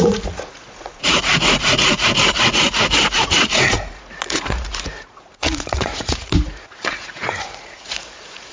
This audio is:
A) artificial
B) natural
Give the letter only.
A